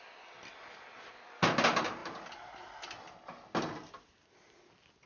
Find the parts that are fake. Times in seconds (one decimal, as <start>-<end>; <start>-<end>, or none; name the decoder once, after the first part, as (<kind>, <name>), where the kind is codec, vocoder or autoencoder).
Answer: none